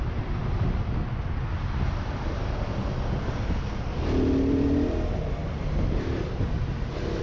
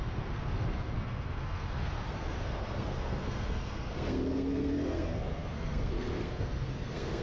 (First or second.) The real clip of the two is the first